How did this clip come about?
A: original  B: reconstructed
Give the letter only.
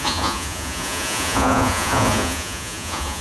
B